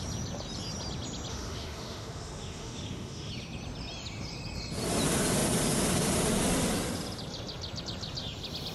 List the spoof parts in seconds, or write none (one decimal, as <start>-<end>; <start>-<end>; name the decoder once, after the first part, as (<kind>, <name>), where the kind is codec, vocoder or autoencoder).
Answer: 1.3-3.3 (autoencoder, DAC-VAE)